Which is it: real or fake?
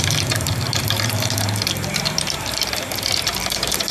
fake